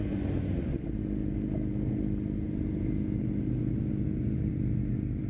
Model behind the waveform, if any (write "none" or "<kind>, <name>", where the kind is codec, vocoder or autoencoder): none